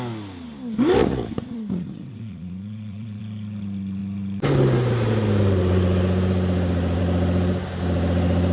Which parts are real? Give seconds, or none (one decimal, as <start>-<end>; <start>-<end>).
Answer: 0.0-1.0; 3.2-8.5